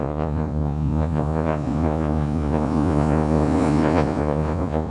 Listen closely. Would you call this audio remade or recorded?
remade